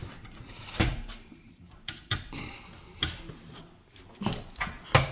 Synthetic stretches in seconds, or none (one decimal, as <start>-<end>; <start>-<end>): 0.0-2.7